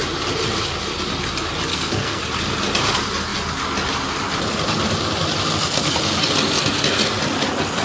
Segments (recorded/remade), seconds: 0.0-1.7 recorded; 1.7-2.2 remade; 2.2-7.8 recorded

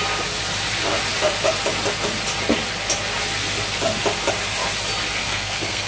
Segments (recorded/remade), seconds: 0.0-5.2 recorded; 5.2-5.9 remade

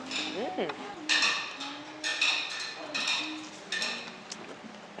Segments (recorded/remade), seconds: 0.0-2.1 recorded; 2.1-3.2 remade; 3.2-5.0 recorded